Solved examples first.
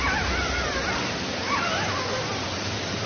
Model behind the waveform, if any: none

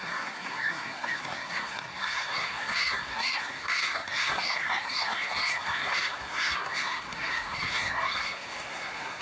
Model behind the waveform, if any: codec, SNAC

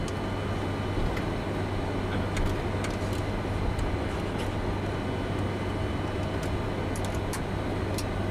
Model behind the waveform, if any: none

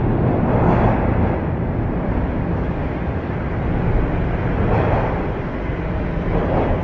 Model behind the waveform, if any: none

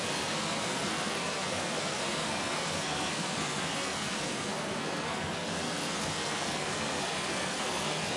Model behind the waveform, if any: codec, SNAC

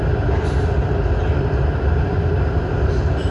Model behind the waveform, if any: none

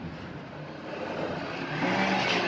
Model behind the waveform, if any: none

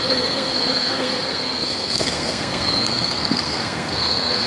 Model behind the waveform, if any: codec, SNAC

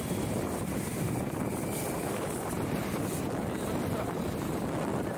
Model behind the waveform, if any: none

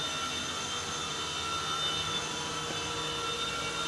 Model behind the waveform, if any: none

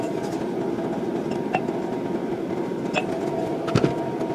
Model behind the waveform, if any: none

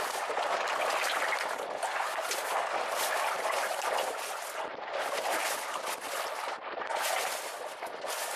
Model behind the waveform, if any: none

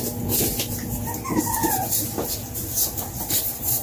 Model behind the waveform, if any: none